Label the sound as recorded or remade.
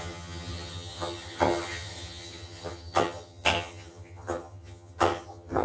remade